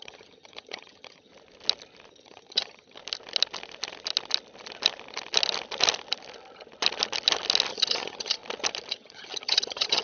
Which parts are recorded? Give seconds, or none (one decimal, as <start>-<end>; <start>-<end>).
1.3-2.1; 3.0-7.7; 8.4-8.9

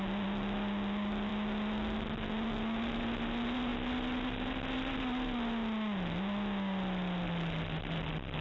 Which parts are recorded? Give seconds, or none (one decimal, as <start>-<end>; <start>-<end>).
0.0-8.4

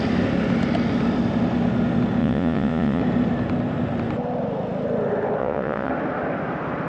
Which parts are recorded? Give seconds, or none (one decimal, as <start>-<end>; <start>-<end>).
0.0-2.2; 3.0-5.4; 5.9-6.9